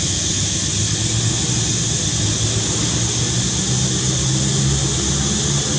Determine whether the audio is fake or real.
real